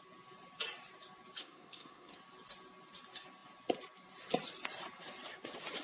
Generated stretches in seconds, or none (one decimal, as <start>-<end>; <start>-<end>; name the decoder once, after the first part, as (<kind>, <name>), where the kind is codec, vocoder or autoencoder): 1.4-2.2 (codec, SNAC)